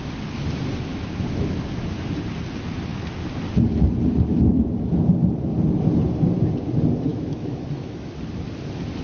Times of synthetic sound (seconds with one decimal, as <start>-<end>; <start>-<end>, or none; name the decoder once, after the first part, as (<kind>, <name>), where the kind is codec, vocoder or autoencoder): 0.9-1.6 (autoencoder, DAC-VAE); 4.3-5.0; 7.1-8.2